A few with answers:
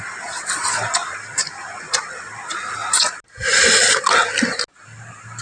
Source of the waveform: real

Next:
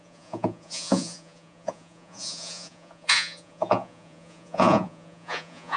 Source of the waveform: fake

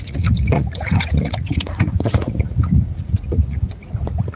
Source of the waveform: fake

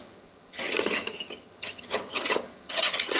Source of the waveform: fake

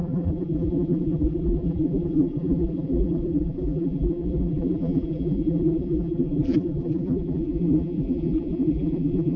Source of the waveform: fake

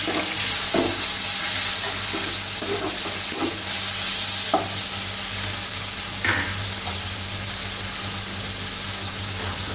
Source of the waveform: real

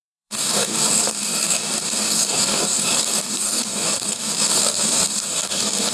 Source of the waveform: fake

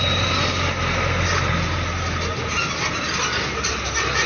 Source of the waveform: real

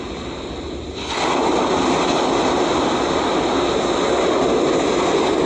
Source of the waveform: real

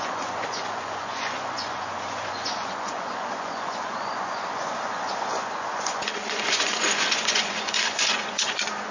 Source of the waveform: fake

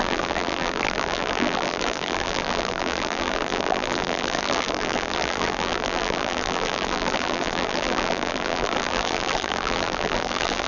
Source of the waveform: fake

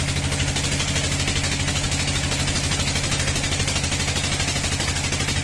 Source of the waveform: real